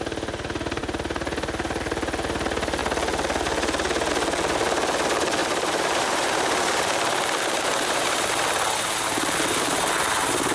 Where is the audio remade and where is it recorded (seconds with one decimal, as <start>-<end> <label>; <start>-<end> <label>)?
0.0-5.4 recorded; 5.4-8.3 remade; 8.3-10.5 recorded